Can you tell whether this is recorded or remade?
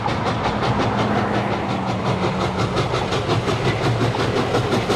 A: recorded